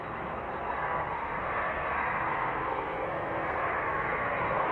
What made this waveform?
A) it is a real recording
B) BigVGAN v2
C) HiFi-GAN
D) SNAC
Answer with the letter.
D